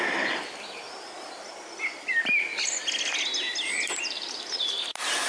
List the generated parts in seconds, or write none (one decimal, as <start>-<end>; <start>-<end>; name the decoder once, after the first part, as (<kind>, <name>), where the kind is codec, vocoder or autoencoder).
none